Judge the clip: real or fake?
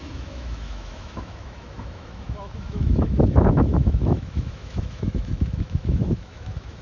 fake